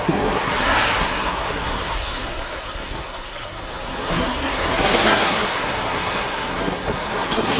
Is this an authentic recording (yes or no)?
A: no